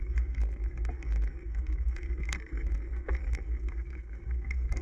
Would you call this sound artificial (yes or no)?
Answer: yes